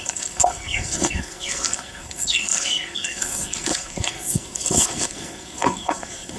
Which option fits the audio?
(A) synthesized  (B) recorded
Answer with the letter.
A